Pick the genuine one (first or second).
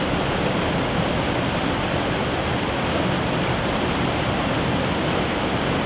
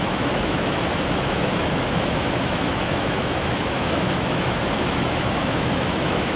first